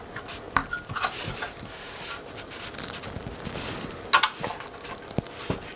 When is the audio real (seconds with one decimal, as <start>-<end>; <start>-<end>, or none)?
0.0-5.8